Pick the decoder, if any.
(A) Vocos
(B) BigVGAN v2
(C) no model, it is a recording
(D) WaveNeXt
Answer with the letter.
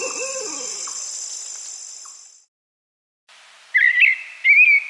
C